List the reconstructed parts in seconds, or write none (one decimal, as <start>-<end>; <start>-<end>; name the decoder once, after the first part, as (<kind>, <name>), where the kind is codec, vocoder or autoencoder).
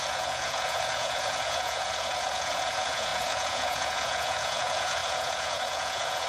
0.0-6.3 (vocoder, Vocos)